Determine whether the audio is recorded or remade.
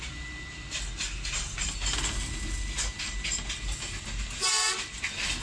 recorded